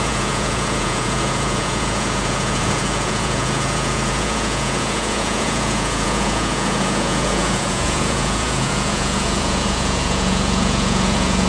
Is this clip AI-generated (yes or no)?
yes